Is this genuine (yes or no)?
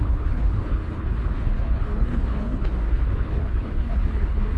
no